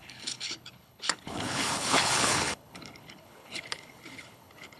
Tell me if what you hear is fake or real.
fake